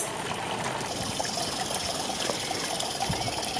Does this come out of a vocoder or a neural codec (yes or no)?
no